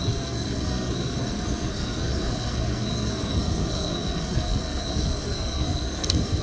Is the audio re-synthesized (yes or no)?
yes